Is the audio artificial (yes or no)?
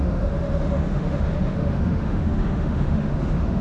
yes